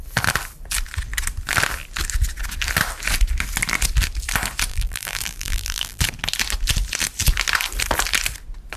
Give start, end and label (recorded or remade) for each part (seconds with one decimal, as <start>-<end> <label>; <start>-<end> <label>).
0.0-4.7 recorded; 4.7-6.0 remade; 6.0-8.8 recorded